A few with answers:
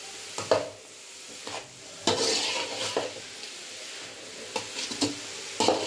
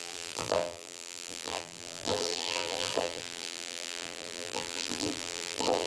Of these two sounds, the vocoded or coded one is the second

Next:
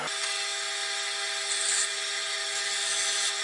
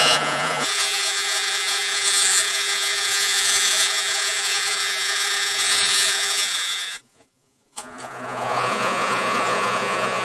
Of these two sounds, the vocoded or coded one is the second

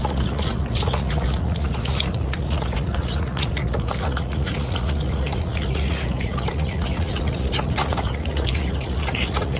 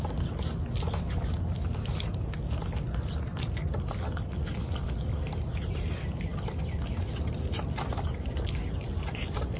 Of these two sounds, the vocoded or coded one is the first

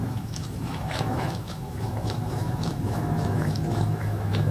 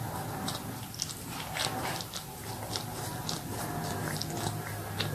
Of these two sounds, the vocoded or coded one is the first